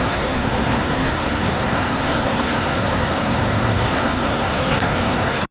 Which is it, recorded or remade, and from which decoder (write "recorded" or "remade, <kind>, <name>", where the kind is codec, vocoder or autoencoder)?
remade, codec, SNAC